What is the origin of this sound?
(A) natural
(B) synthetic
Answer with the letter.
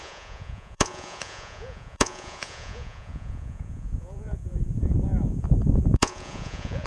B